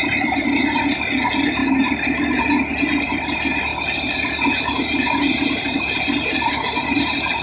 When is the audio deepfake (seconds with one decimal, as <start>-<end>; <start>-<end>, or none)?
none